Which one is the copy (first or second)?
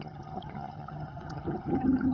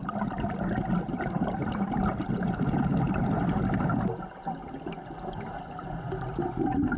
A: first